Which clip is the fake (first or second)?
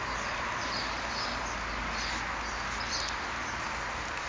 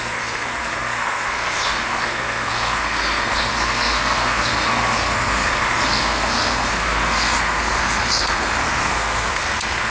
second